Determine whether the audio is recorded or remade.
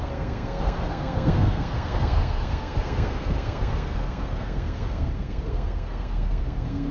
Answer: remade